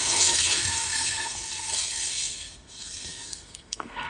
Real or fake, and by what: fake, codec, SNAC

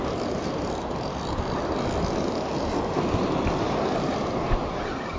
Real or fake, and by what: real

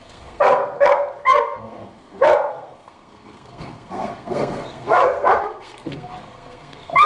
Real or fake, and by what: fake, codec, SNAC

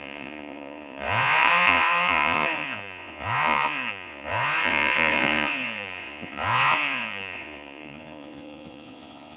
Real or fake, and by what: fake, vocoder, Vocos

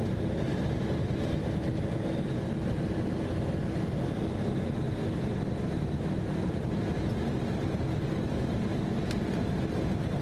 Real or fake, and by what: real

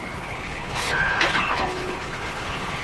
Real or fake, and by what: fake, codec, HILCodec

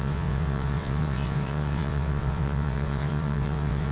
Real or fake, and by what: fake, vocoder, WaveNeXt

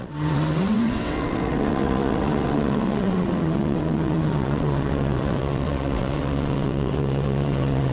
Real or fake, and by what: fake, vocoder, WaveNeXt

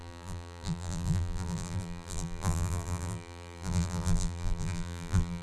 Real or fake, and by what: fake, vocoder, BigVGAN v2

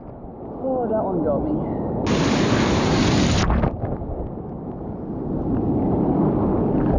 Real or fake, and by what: real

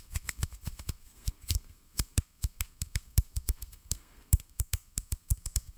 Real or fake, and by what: fake, codec, SNAC